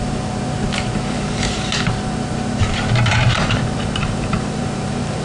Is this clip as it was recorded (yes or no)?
no